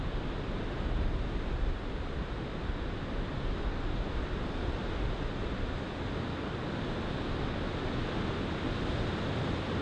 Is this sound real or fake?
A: real